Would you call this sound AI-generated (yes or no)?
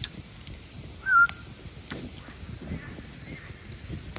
no